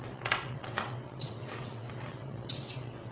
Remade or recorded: remade